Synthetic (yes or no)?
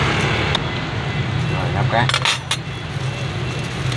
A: no